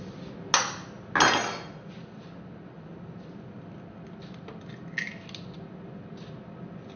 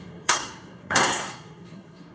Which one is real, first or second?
first